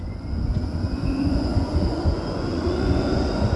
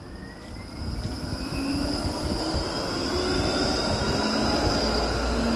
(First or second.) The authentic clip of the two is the second